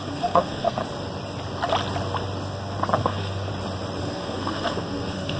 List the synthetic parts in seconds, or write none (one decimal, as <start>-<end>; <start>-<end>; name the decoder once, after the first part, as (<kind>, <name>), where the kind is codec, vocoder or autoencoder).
0.0-0.8 (codec, SNAC); 3.0-3.5; 4.0-5.4